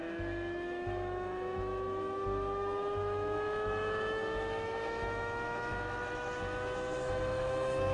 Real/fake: fake